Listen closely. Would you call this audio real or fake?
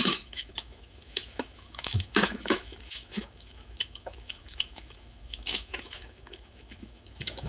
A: fake